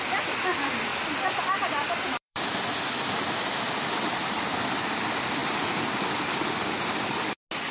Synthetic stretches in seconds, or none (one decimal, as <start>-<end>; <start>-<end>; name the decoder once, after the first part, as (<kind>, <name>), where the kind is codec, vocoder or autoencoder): 0.9-4.0 (vocoder, BigVGAN v2)